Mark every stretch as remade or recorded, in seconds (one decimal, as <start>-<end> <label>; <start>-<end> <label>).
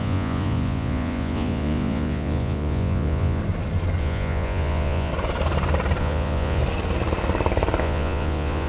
0.0-3.4 remade; 3.4-4.0 recorded; 4.0-5.1 remade; 5.1-6.0 recorded; 6.0-6.6 remade; 6.6-7.8 recorded; 7.8-8.7 remade